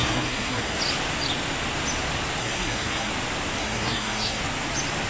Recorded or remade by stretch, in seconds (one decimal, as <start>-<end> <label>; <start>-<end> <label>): 0.0-0.8 remade; 0.8-2.4 recorded; 2.4-3.1 remade; 3.1-3.6 recorded; 3.6-4.4 remade; 4.4-5.1 recorded